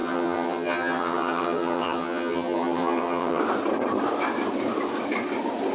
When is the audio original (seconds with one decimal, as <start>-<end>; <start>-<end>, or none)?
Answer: 3.4-5.7